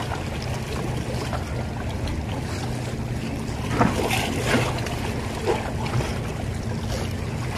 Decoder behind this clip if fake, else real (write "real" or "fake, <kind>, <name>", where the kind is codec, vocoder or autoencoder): real